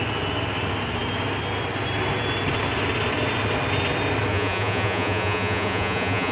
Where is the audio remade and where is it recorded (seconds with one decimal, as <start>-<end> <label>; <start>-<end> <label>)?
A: 0.0-4.3 recorded; 4.3-6.3 remade